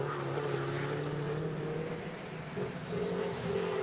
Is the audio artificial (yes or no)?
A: no